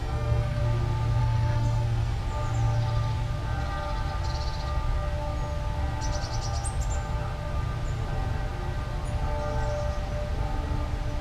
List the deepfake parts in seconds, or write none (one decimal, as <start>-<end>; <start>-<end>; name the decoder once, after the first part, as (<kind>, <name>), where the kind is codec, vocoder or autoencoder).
0.0-0.6 (codec, SNAC); 1.2-2.2